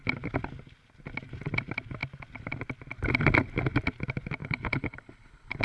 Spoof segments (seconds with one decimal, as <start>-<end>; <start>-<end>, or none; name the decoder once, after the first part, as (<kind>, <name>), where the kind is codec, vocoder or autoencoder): 4.4-5.6 (codec, HILCodec)